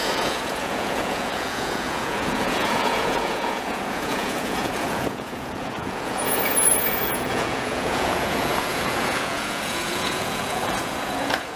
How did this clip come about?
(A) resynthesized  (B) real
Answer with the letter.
A